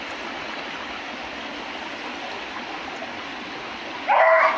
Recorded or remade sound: recorded